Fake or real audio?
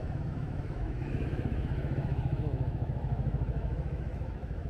fake